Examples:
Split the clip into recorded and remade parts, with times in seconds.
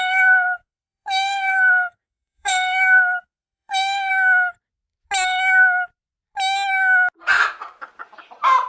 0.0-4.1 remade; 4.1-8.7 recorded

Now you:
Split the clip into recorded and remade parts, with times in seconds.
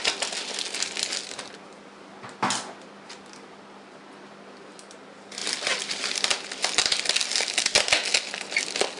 0.0-9.0 recorded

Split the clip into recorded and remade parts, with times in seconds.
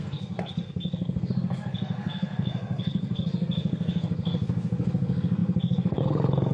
0.0-6.5 remade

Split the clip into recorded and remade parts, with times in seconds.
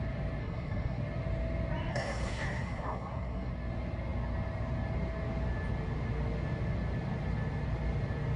0.0-0.4 recorded; 0.4-1.0 remade; 1.0-1.9 recorded; 1.9-3.5 remade; 3.5-8.4 recorded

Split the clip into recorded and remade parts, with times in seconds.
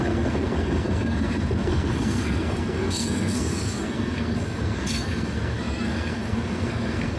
0.0-7.2 remade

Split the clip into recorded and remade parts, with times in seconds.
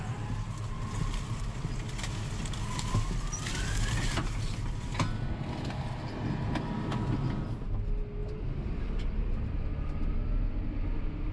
0.0-11.3 recorded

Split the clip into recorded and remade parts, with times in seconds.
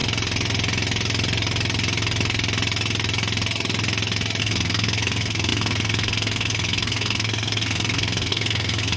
0.0-4.4 recorded; 4.4-9.0 remade